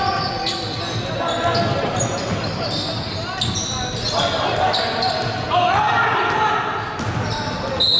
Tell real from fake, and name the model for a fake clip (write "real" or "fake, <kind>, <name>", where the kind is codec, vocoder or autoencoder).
real